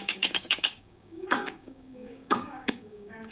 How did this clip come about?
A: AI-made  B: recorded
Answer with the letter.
A